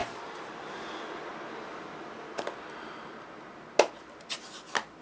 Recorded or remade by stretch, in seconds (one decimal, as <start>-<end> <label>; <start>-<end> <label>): 0.0-0.7 remade; 0.7-5.0 recorded